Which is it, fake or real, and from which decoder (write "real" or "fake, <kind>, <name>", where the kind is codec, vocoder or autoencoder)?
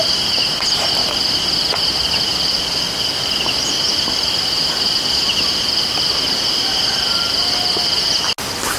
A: real